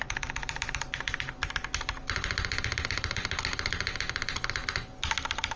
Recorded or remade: recorded